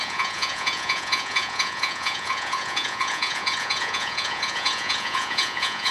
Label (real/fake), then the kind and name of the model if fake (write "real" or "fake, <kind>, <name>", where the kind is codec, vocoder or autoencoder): fake, vocoder, Vocos